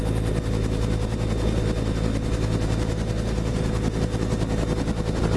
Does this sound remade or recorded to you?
recorded